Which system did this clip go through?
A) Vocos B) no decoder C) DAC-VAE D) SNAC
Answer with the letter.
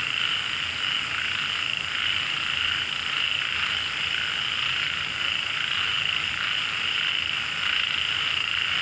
B